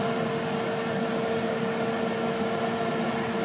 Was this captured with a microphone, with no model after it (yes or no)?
yes